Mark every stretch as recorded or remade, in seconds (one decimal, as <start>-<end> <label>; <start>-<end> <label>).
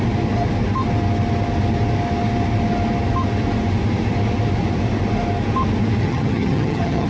0.0-6.0 recorded; 6.0-7.1 remade